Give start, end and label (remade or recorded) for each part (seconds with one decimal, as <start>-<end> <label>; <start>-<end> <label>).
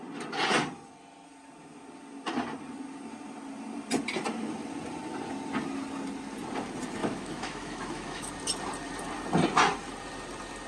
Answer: 0.0-7.0 recorded; 7.0-8.3 remade; 8.3-10.7 recorded